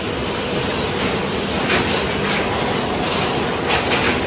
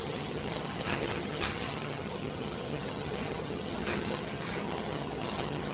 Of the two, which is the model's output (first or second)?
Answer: second